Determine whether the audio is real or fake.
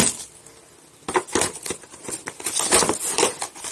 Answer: real